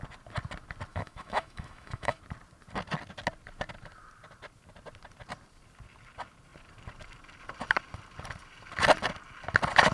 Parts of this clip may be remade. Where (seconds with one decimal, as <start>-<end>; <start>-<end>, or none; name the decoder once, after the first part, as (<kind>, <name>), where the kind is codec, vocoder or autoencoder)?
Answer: 0.9-2.2 (autoencoder, DAC-VAE)